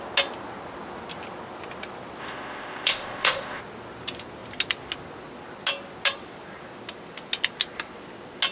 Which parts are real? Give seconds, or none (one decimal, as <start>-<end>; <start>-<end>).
0.0-2.2; 3.6-8.5